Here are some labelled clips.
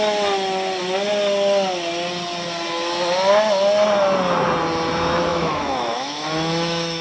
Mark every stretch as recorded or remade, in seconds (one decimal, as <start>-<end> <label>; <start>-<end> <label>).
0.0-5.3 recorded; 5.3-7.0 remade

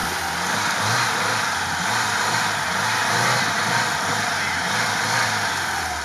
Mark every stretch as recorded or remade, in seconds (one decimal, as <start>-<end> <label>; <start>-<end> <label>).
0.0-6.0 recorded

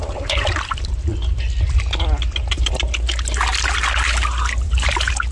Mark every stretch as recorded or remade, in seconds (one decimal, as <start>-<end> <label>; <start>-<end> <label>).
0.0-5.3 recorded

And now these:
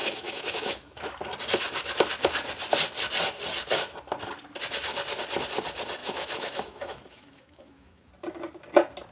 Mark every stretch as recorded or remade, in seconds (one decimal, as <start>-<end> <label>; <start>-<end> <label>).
0.0-1.1 remade; 1.1-6.0 recorded; 6.0-8.1 remade; 8.1-9.1 recorded

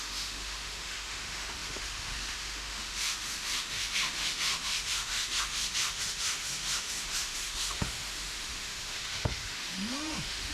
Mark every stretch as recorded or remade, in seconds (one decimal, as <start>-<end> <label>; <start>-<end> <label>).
0.0-10.5 remade